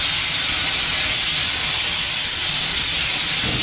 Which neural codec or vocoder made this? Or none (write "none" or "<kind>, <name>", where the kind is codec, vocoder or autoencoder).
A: none